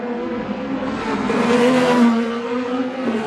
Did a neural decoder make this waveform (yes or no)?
yes